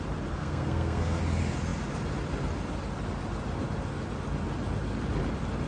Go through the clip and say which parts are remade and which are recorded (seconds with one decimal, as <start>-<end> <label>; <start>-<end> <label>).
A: 0.0-0.4 recorded; 0.4-1.2 remade; 1.2-5.7 recorded